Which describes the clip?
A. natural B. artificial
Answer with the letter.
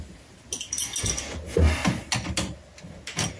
A